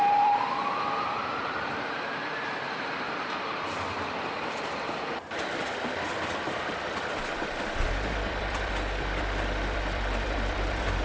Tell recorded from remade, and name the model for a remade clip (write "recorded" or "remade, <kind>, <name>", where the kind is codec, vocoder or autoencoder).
remade, vocoder, BigVGAN v2